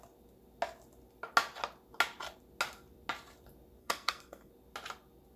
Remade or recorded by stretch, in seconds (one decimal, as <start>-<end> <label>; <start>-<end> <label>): 0.0-3.8 recorded; 3.8-4.5 remade; 4.5-5.4 recorded